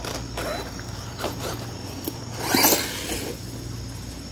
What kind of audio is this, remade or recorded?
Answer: recorded